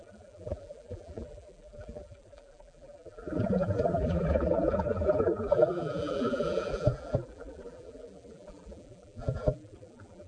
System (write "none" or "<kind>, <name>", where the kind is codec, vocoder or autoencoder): vocoder, BigVGAN v2